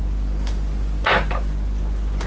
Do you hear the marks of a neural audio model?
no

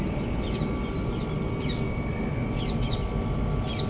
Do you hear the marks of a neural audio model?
no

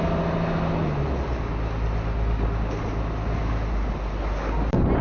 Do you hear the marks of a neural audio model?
no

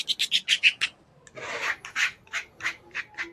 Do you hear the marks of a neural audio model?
no